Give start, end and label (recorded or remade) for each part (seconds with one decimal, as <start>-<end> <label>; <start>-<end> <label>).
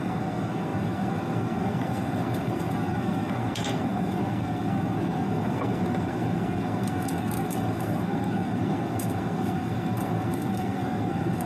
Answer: 0.0-11.5 remade